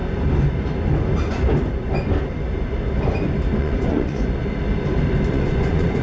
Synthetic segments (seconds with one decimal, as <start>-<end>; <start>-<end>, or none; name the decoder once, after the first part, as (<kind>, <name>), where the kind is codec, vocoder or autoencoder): 3.6-4.4 (vocoder, Vocos); 5.3-6.0